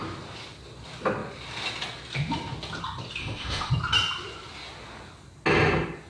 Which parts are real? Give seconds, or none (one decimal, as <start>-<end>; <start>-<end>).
0.0-3.2; 3.7-6.1